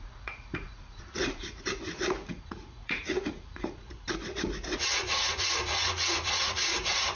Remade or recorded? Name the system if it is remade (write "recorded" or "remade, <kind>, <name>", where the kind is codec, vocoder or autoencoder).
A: remade, vocoder, Vocos